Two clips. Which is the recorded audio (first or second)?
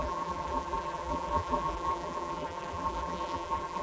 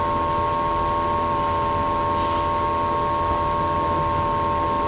second